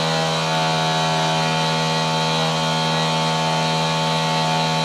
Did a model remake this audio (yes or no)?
no